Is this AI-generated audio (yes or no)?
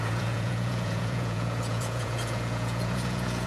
yes